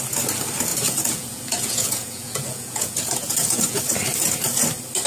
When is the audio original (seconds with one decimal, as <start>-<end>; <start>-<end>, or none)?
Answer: 0.0-0.7; 3.8-5.1

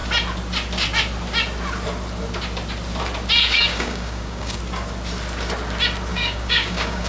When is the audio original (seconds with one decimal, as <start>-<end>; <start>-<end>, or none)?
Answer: 0.0-3.4; 4.6-6.1

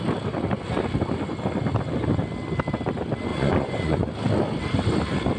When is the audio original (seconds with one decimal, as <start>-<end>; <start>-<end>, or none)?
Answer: 0.0-3.3; 4.1-5.4

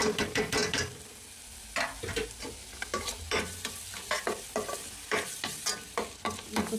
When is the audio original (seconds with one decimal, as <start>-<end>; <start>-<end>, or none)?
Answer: 0.0-6.8